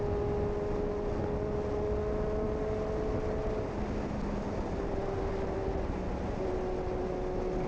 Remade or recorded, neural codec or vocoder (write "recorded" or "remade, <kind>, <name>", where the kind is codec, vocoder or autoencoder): recorded